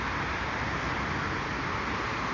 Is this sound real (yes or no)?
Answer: yes